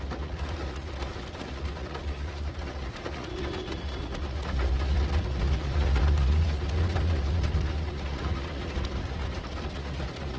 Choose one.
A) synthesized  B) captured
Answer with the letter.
A